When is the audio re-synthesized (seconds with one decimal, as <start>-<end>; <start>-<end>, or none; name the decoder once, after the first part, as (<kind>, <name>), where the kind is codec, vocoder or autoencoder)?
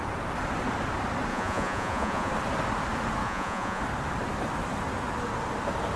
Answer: 1.3-2.3 (vocoder, Vocos); 3.2-3.8